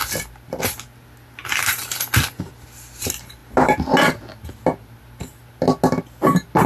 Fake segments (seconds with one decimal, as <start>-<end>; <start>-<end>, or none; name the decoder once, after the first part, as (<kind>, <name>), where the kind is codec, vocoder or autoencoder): none